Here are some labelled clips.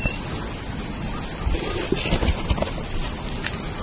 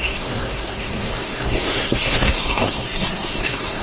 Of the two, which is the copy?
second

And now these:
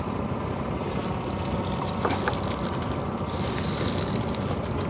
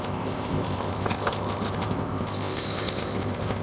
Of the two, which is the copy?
second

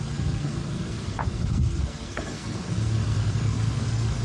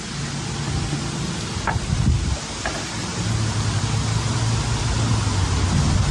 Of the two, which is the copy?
first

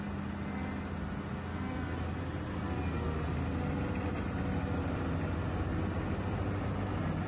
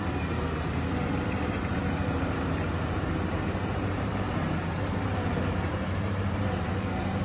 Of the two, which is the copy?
second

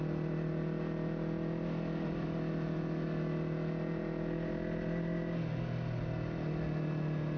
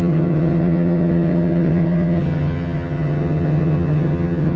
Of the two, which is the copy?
second